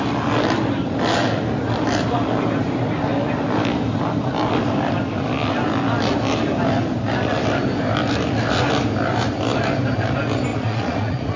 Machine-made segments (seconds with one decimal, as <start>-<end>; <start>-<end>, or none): 10.5-11.4